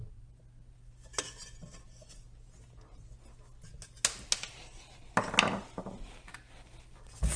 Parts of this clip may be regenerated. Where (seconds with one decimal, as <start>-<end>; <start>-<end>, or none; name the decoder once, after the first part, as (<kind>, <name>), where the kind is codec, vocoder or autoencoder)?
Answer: none